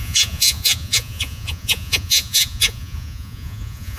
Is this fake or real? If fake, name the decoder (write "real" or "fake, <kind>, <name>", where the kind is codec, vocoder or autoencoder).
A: fake, vocoder, Vocos